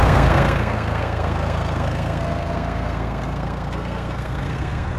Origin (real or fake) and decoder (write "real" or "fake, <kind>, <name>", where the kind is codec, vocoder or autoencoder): fake, codec, SNAC